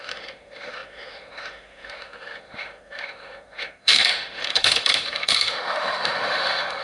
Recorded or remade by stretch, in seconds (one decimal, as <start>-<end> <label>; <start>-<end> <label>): 0.0-6.8 remade